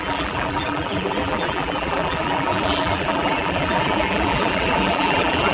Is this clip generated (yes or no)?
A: yes